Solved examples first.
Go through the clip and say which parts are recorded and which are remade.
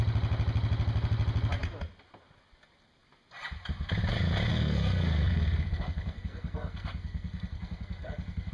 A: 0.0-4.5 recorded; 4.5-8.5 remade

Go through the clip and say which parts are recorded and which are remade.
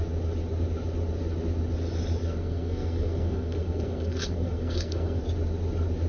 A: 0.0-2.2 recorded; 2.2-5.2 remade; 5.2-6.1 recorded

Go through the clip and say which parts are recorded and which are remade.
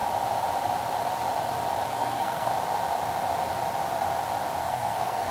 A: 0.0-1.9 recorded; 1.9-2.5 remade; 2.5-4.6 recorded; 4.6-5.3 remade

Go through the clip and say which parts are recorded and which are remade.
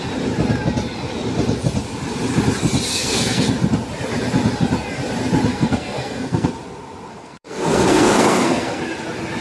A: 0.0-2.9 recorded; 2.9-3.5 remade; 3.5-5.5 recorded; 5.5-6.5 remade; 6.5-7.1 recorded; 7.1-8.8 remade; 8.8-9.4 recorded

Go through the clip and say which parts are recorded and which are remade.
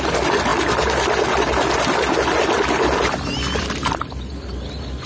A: 0.0-5.1 recorded